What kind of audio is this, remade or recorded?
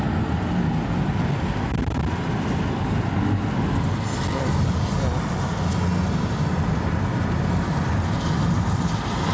recorded